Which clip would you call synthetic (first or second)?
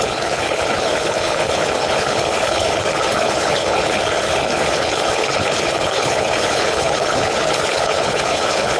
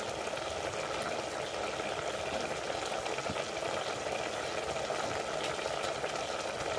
first